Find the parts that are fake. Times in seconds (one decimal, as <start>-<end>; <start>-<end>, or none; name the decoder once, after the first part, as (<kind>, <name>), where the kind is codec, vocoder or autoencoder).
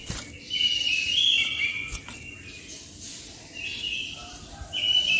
none